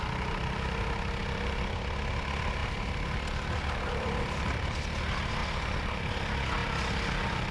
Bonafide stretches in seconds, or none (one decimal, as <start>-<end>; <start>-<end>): 0.0-2.6; 5.0-5.4; 6.1-7.5